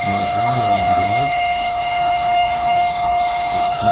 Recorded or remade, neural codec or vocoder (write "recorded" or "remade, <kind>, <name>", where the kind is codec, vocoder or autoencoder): remade, codec, HILCodec